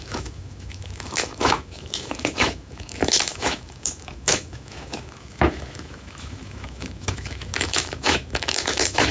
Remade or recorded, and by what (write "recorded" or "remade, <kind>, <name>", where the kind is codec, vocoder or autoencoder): remade, autoencoder, DAC-VAE